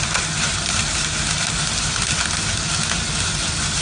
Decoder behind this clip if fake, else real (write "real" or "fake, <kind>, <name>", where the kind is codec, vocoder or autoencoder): real